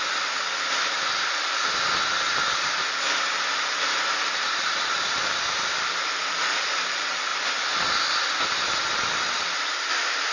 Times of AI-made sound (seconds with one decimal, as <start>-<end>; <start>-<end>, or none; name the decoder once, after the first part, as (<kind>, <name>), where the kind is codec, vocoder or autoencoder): none